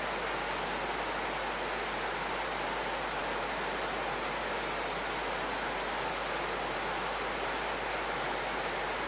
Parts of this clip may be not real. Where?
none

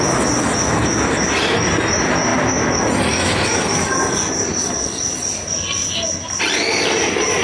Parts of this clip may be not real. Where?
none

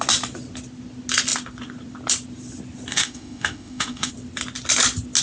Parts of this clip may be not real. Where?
2.9-4.1 (autoencoder, DAC-VAE)

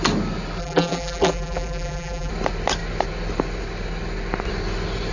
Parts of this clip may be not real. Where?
0.6-2.3 (vocoder, BigVGAN v2)

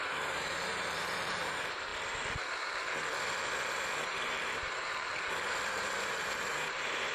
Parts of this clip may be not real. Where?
0.0-1.9 (vocoder, BigVGAN v2); 4.0-5.1; 6.5-7.1

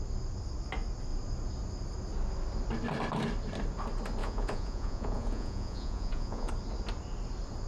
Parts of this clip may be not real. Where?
4.2-6.5 (vocoder, Vocos)